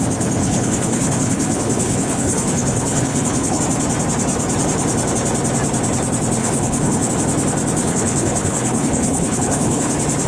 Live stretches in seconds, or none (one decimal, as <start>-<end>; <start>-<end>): 0.0-0.4; 3.6-6.4; 7.1-7.8; 9.9-10.3